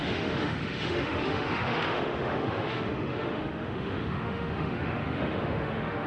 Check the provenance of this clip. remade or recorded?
remade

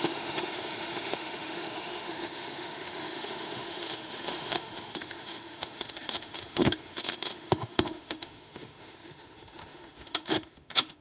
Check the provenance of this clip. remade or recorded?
remade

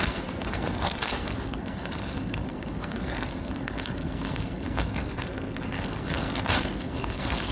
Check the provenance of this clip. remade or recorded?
remade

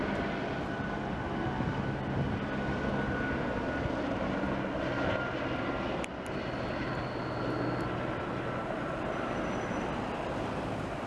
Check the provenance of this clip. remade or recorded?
recorded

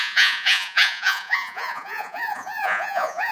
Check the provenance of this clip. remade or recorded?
remade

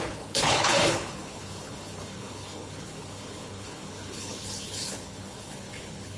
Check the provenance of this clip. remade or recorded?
remade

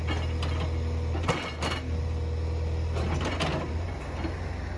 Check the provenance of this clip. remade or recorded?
recorded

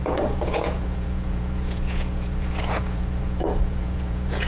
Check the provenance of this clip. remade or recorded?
remade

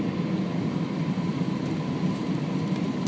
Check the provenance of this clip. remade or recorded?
recorded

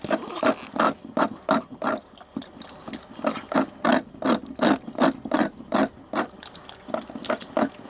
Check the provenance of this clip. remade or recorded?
recorded